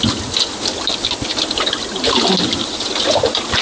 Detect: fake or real real